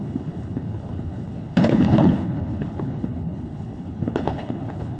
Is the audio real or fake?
fake